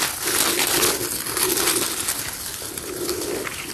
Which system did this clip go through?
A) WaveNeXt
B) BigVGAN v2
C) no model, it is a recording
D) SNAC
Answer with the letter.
C